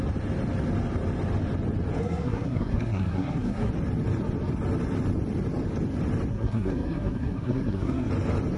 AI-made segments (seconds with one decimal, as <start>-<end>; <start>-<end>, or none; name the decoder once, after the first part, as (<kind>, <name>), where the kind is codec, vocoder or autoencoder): 2.0-3.7 (codec, SNAC); 6.3-8.1